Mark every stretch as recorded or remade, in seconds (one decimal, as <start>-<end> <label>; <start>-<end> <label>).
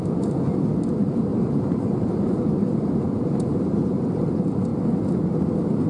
0.0-1.3 recorded; 1.3-4.2 remade; 4.2-5.9 recorded